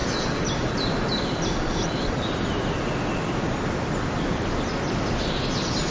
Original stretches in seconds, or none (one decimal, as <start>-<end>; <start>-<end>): 0.0-5.9